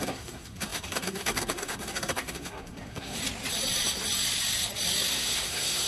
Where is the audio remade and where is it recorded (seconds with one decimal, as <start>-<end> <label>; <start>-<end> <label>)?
0.0-3.2 remade; 3.2-5.1 recorded; 5.1-5.9 remade